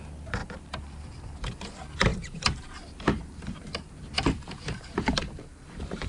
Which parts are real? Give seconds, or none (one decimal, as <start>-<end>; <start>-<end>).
0.0-0.4; 1.6-2.1